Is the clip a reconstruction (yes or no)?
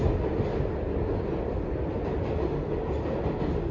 no